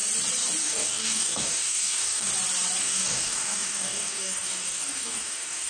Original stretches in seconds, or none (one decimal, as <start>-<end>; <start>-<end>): 0.0-0.6; 2.3-2.8